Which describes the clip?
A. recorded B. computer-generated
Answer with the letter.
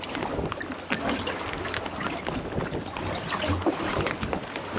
A